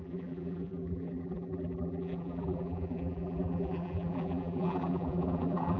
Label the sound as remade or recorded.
remade